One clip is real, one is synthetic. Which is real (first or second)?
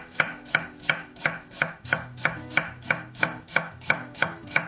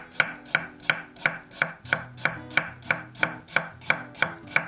second